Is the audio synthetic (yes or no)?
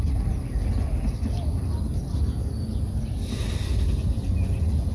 no